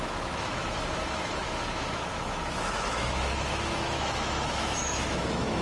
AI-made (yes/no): yes